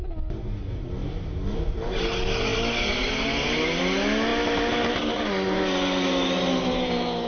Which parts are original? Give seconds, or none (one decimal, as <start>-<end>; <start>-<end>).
0.0-1.0; 2.0-7.3